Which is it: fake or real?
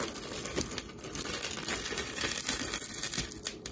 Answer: real